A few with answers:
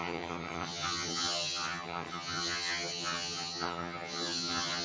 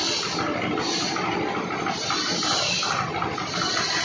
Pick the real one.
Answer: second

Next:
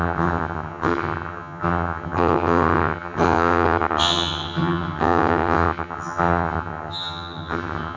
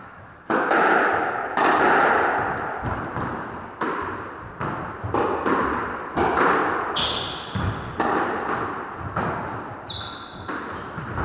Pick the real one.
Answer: second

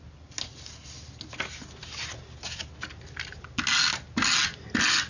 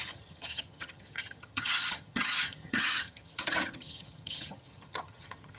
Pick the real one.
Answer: first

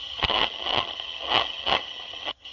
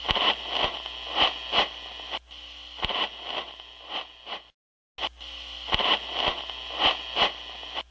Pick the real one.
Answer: second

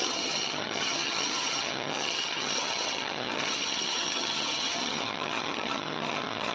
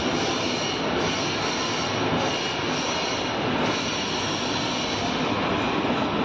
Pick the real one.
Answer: second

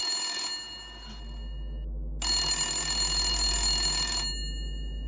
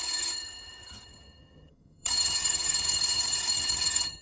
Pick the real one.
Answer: first